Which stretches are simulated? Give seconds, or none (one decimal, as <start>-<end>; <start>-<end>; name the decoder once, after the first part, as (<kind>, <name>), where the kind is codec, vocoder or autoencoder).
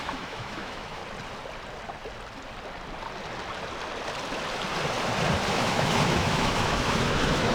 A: 0.0-1.0 (autoencoder, DAC-VAE); 5.5-7.5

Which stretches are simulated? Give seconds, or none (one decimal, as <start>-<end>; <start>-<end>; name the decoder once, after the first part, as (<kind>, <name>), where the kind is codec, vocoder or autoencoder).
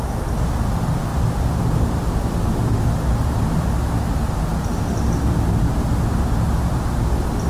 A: none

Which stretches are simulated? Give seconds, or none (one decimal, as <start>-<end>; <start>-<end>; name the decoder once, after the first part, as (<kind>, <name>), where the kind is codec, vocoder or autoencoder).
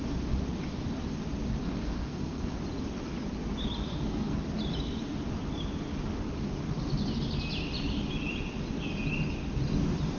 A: 1.6-2.6 (codec, SNAC); 3.9-4.4